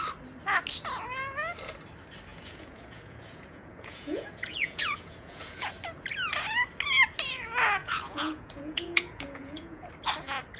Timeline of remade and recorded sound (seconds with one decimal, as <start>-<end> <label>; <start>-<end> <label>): 0.0-2.3 recorded; 2.3-5.7 remade; 5.7-7.8 recorded; 7.8-9.9 remade; 9.9-10.6 recorded